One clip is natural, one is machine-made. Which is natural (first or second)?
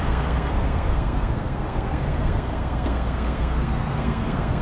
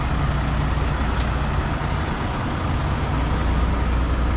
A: second